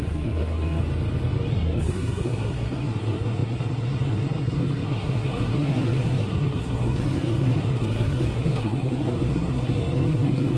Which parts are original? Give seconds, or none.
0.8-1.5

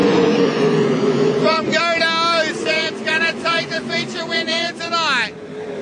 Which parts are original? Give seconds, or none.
1.8-2.6; 4.9-5.8

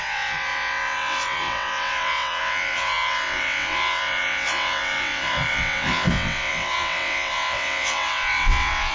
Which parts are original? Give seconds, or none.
none

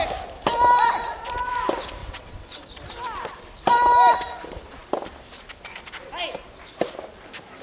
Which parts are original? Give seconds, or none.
0.0-2.0; 2.6-7.6

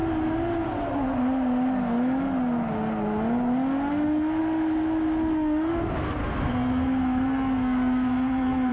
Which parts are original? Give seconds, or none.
0.0-6.2

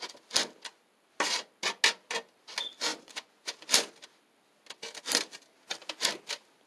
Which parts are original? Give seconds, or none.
0.0-2.9; 3.5-6.7

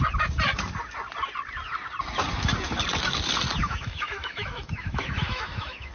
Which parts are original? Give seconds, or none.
0.0-3.6